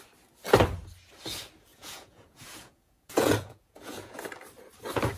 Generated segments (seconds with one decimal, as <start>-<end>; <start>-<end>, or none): 1.7-4.2